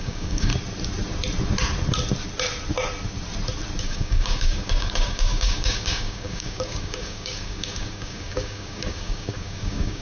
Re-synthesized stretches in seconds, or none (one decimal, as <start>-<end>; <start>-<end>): 0.0-0.5; 3.8-10.0